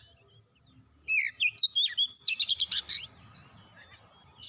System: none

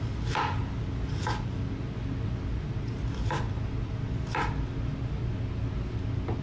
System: none